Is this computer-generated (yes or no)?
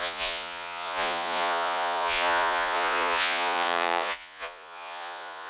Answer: yes